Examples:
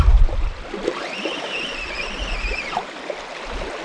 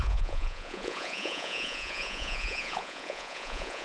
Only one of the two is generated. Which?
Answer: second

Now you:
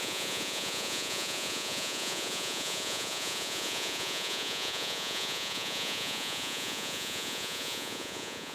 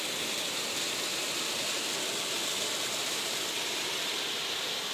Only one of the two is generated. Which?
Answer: first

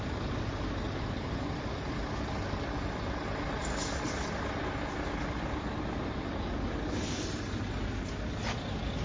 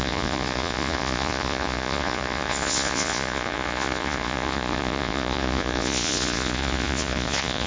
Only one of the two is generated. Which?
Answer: second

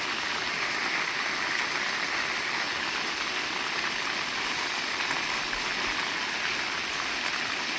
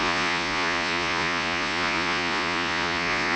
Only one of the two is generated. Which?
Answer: second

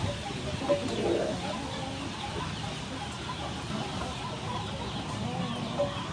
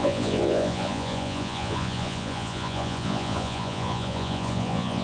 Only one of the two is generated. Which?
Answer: second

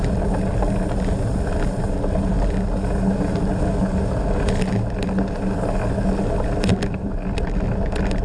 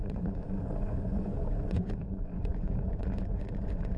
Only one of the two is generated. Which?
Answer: second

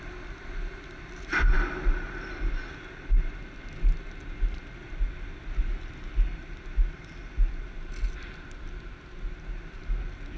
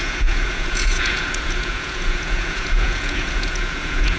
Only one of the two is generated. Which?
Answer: second